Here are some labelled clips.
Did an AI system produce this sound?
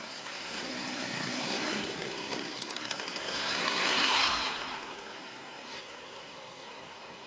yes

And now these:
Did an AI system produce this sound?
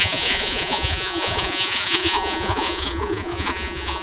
yes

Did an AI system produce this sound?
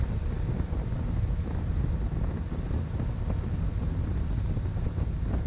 no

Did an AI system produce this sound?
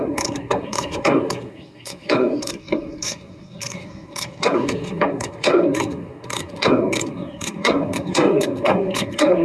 yes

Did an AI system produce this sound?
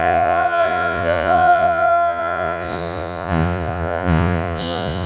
yes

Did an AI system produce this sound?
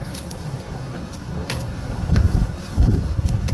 yes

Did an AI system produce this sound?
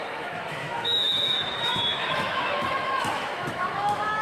yes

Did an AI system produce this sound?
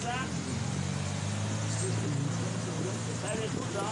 no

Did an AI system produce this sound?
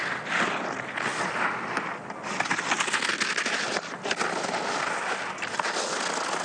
no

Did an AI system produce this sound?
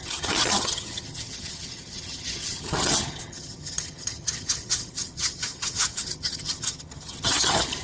yes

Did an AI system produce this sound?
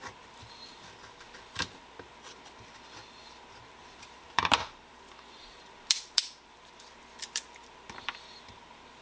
yes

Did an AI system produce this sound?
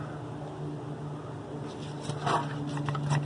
no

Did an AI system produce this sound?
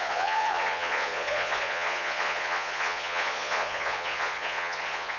yes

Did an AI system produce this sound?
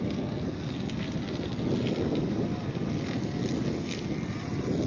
no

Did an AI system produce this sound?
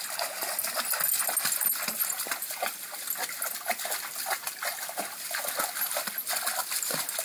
no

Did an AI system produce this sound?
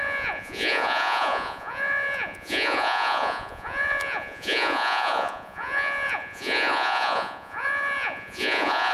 yes